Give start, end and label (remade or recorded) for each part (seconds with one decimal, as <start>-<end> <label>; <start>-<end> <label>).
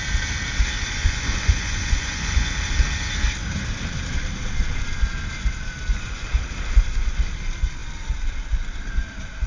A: 0.0-1.0 recorded; 1.0-2.5 remade; 2.5-5.9 recorded; 5.9-6.4 remade; 6.4-9.5 recorded